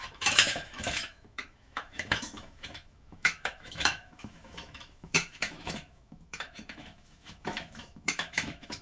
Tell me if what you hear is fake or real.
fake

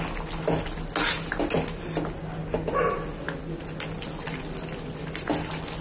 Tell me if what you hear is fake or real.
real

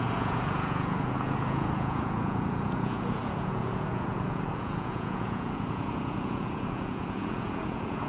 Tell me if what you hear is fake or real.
fake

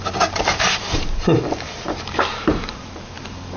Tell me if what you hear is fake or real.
fake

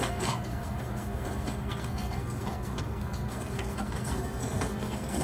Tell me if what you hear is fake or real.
fake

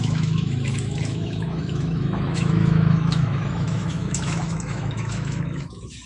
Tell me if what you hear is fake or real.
fake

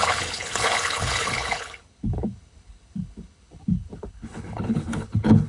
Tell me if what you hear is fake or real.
fake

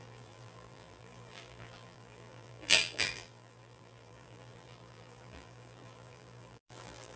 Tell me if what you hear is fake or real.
fake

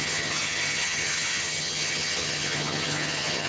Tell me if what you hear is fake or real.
fake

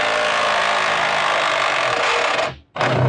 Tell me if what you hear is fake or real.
real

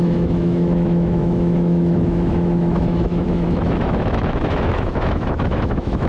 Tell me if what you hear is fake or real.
fake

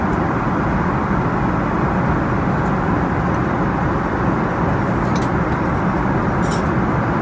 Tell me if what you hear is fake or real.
real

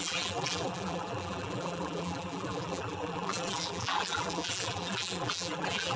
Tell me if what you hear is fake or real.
fake